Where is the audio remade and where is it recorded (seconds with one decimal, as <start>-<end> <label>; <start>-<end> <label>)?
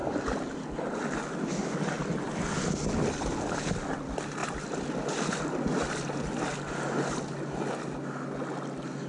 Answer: 0.0-9.1 recorded